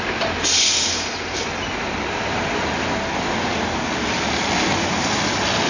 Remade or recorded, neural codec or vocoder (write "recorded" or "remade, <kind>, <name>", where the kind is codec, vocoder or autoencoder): recorded